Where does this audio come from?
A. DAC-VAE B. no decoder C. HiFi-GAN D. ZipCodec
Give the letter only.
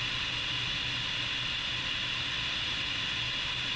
B